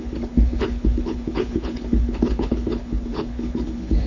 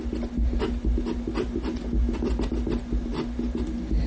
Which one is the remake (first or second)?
first